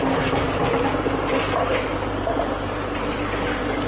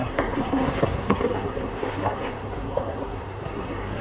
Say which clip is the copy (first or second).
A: second